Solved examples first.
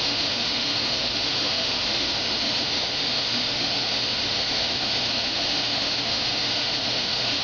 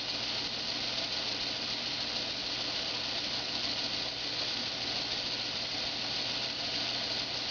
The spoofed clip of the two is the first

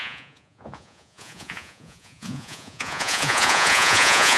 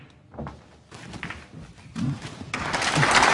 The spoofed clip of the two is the first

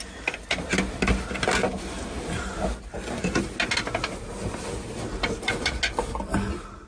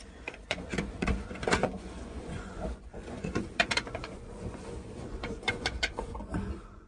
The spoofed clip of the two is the second